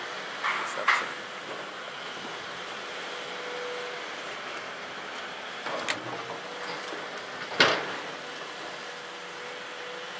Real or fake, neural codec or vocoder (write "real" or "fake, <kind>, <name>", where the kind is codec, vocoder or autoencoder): real